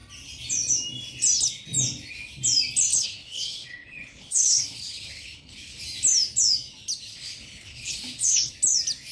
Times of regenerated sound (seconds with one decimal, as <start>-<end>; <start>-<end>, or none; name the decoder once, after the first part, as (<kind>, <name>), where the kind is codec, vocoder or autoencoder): 2.9-5.8 (codec, HILCodec); 7.1-8.5